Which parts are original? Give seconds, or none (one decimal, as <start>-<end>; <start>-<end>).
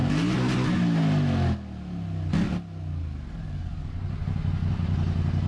0.0-3.3; 4.2-4.7